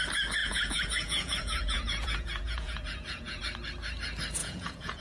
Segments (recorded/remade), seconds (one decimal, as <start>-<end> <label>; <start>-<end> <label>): 0.0-0.4 recorded; 0.4-3.4 remade; 3.4-4.4 recorded; 4.4-5.0 remade